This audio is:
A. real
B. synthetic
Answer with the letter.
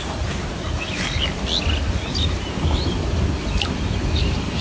A